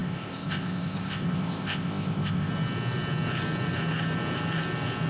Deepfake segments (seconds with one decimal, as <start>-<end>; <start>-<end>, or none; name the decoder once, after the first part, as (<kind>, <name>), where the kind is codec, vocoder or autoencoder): 0.0-2.5 (codec, ZipCodec)